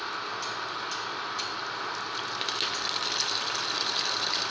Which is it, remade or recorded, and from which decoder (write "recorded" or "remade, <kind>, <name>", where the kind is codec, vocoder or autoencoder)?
recorded